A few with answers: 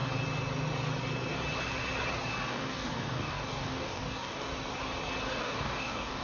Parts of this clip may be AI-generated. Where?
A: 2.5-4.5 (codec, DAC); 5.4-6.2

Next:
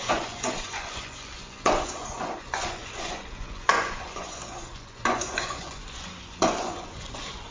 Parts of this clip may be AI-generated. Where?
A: 0.0-7.5 (vocoder, Vocos)

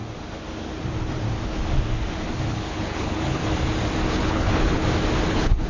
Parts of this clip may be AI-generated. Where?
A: 2.5-3.4 (codec, HILCodec); 4.1-4.8; 5.3-5.7

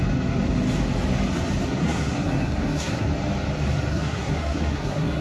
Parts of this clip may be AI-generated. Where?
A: 1.8-3.1 (codec, SNAC); 3.9-5.2

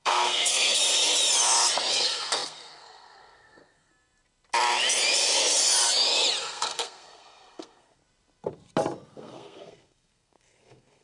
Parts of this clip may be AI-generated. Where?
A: 0.0-0.8 (codec, SNAC); 1.9-3.9; 6.4-8.0; 9.1-11.0

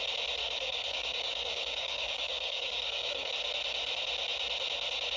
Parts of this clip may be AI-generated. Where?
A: 0.4-3.3 (codec, DAC)

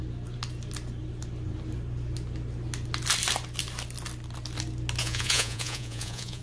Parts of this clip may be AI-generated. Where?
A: 5.0-6.4 (vocoder, Vocos)

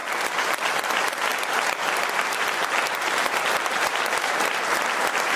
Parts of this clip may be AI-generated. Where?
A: 0.0-0.6 (vocoder, BigVGAN v2); 1.3-4.5